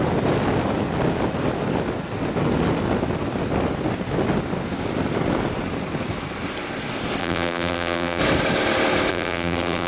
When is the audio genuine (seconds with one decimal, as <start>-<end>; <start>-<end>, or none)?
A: 0.0-7.2; 8.2-9.1